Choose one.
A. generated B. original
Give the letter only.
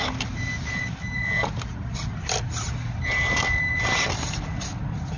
B